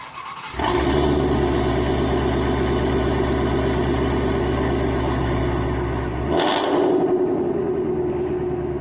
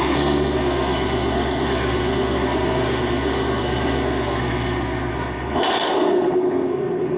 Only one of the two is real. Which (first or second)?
first